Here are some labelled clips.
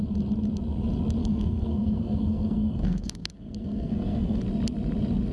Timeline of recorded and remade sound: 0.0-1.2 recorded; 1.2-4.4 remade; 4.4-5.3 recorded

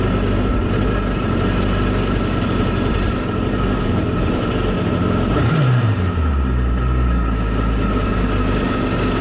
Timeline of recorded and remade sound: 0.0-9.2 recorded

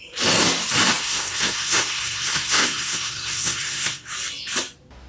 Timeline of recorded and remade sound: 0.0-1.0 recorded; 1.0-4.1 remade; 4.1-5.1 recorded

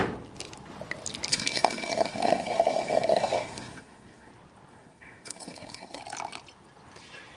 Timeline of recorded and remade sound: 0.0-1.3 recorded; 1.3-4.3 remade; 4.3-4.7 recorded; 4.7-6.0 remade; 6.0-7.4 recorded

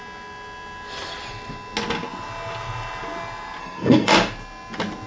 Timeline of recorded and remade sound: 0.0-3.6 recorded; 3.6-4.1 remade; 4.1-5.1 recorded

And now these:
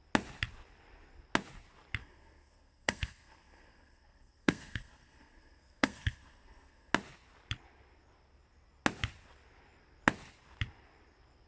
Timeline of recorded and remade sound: 0.0-2.0 recorded; 2.0-6.9 remade; 6.9-11.5 recorded